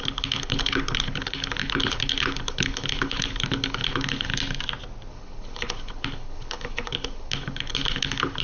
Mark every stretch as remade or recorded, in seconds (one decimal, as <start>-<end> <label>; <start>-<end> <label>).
0.0-4.3 remade; 4.3-5.1 recorded; 5.1-8.4 remade